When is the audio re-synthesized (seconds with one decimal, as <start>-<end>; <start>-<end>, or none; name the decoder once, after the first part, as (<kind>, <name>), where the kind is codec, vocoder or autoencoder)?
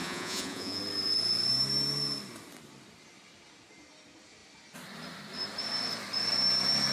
0.0-0.8 (vocoder, Vocos)